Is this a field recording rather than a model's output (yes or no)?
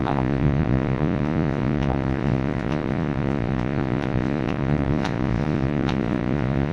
no